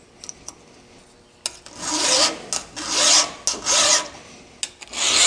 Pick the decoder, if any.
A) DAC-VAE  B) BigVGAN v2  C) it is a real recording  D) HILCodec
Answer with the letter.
C